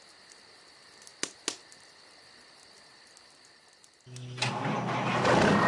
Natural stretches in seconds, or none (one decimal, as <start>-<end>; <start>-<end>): 0.0-5.7